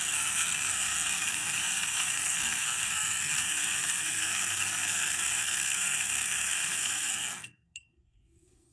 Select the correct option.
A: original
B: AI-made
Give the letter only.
B